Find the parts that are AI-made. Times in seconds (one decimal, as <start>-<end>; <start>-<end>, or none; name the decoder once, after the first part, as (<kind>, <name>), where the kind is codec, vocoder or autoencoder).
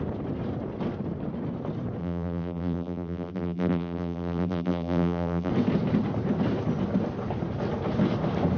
2.0-5.5 (vocoder, BigVGAN v2)